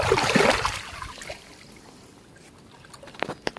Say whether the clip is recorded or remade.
recorded